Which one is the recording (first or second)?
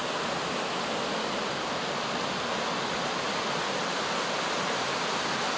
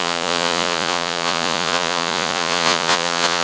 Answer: first